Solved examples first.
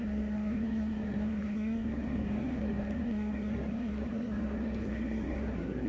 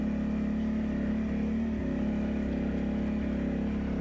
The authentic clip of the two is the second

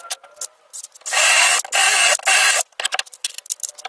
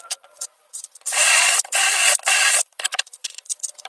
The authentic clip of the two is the first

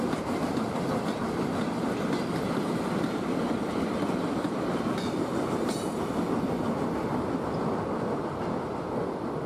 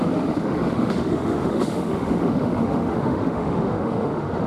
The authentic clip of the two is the first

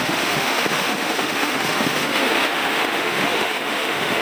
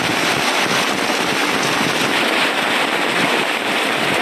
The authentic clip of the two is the second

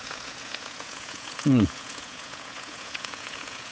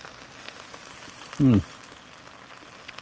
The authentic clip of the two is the second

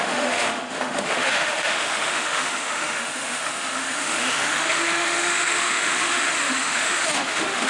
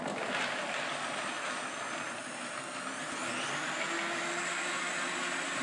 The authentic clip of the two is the second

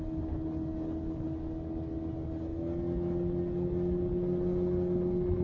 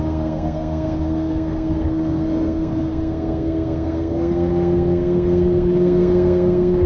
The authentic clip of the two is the first